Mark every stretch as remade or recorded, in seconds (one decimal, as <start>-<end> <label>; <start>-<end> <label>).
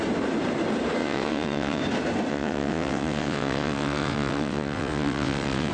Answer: 0.0-1.0 recorded; 1.0-1.8 remade; 1.8-2.3 recorded; 2.3-5.7 remade